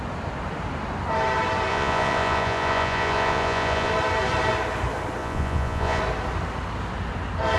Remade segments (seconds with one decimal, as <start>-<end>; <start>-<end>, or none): 1.7-3.9; 5.2-6.0

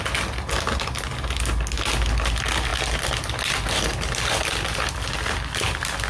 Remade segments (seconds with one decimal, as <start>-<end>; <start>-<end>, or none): none

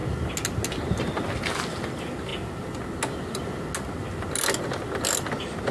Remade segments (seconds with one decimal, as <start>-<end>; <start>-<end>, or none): none

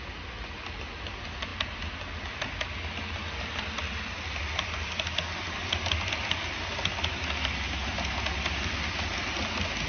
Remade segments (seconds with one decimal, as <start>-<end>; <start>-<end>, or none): none

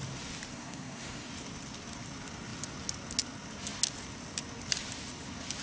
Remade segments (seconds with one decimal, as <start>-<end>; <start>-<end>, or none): 0.5-1.3

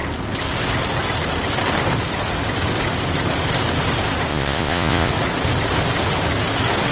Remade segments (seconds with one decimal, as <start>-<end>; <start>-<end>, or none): 4.3-5.1

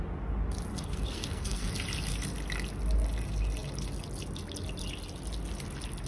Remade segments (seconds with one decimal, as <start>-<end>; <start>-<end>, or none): 0.7-1.7